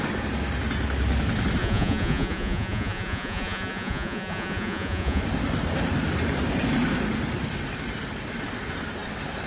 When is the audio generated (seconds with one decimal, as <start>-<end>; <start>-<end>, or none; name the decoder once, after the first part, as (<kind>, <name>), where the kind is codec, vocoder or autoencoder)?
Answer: 1.6-5.2 (vocoder, Vocos)